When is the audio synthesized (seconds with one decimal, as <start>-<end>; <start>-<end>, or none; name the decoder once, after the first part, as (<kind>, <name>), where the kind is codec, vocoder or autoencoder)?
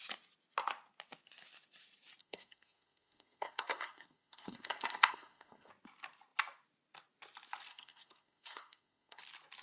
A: 2.2-5.7 (codec, SNAC); 7.7-9.2